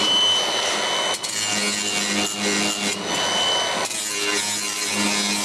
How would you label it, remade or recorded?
recorded